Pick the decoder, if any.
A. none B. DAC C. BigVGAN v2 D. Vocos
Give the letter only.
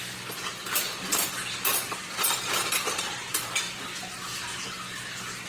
A